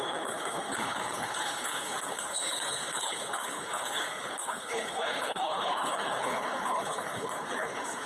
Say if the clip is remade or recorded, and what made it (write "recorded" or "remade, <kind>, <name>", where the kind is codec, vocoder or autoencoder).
remade, codec, HILCodec